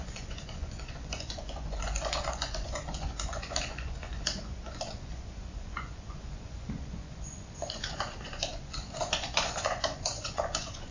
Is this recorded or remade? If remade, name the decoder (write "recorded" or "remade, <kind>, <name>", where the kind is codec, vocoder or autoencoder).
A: remade, vocoder, Vocos